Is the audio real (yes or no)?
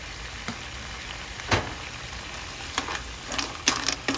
yes